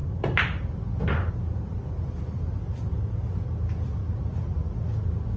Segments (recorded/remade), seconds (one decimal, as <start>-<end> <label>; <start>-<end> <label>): 0.0-5.4 recorded

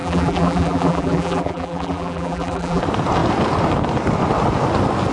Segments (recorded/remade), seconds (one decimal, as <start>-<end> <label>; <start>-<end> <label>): 0.0-2.8 remade; 2.8-5.1 recorded